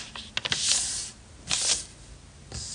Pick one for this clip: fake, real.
real